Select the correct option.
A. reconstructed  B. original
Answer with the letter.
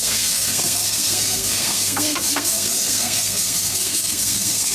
A